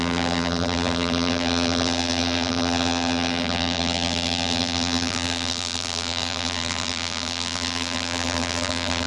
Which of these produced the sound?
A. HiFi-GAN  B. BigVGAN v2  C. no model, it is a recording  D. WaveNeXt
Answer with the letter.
B